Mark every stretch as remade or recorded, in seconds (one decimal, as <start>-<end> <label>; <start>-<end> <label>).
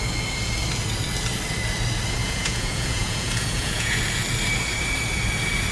0.0-2.2 recorded; 2.2-4.0 remade; 4.0-5.7 recorded